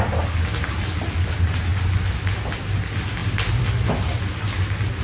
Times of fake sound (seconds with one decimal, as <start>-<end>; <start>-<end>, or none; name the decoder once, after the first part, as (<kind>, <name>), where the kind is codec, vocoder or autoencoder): 3.2-3.9 (vocoder, BigVGAN v2)